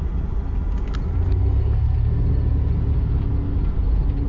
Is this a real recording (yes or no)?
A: yes